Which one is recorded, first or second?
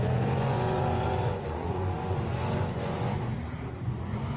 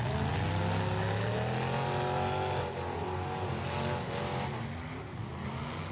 second